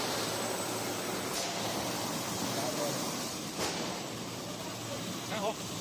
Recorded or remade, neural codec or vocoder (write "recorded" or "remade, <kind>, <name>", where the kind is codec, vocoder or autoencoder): remade, vocoder, BigVGAN v2